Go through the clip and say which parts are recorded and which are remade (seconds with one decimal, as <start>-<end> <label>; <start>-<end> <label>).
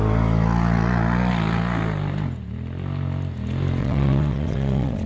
0.0-3.8 recorded; 3.8-5.1 remade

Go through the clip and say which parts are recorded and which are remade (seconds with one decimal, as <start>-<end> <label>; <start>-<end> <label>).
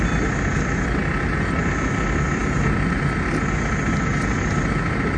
0.0-5.2 recorded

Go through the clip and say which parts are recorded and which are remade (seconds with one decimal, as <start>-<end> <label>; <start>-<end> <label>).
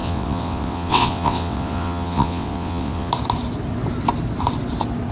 0.0-3.1 remade; 3.1-5.1 recorded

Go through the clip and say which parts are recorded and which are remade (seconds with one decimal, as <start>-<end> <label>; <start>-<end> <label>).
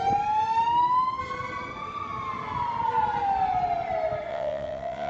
0.0-4.3 recorded; 4.3-5.1 remade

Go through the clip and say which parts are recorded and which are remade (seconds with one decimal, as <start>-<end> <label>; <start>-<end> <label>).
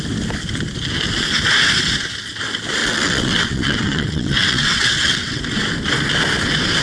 0.0-2.8 recorded; 2.8-5.4 remade; 5.4-6.8 recorded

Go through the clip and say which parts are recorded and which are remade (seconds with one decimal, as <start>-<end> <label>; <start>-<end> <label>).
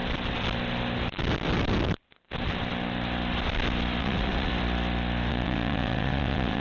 0.0-4.0 recorded; 4.0-4.5 remade; 4.5-5.3 recorded; 5.3-6.6 remade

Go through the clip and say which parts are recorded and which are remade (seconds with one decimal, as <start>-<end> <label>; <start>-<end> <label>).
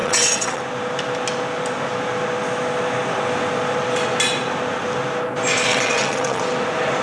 0.0-0.6 remade; 0.6-5.7 recorded; 5.7-6.4 remade; 6.4-7.0 recorded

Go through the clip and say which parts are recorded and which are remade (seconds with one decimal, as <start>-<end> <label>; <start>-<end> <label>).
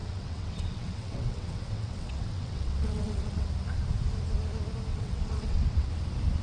0.0-3.5 remade; 3.5-4.9 recorded; 4.9-5.9 remade; 5.9-6.4 recorded